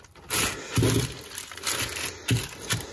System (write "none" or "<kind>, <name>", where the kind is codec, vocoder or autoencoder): none